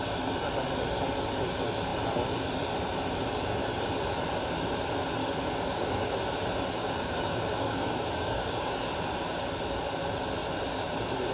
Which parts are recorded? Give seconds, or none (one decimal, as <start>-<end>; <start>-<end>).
0.0-5.2; 6.1-6.8; 8.8-11.3